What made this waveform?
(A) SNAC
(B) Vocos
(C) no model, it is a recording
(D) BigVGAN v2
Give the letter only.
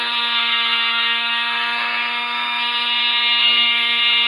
A